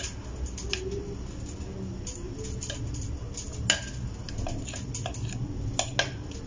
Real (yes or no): yes